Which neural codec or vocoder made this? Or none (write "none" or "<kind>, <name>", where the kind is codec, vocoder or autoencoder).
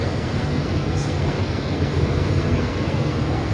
codec, SNAC